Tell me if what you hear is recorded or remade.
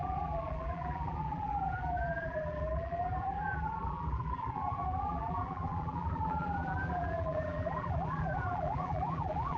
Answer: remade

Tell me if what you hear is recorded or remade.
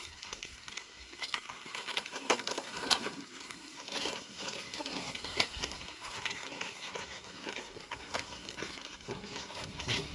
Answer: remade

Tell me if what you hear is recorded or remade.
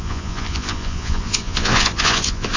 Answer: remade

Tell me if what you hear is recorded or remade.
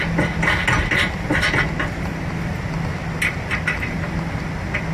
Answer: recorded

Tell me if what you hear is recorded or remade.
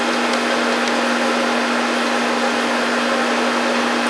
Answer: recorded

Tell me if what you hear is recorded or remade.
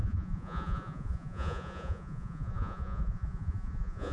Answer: remade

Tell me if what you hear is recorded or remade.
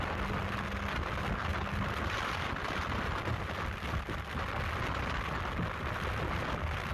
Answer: recorded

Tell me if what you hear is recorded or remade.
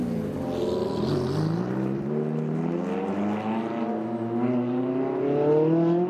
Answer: recorded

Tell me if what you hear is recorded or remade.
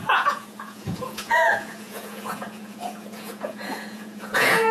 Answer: remade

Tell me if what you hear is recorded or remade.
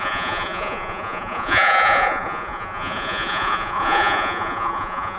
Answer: remade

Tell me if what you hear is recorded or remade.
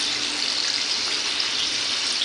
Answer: recorded